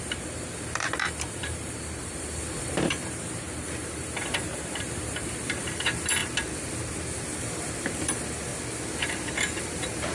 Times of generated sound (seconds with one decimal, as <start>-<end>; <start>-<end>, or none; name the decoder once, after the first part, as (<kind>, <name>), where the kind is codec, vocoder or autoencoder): 0.0-6.2 (vocoder, BigVGAN v2); 7.4-8.5; 9.0-10.1